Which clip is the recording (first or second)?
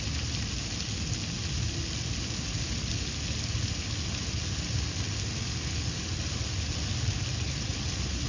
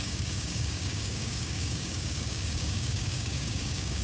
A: first